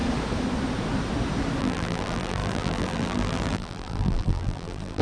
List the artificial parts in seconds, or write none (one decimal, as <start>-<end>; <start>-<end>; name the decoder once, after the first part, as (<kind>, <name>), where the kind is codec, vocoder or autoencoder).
1.6-5.0 (vocoder, BigVGAN v2)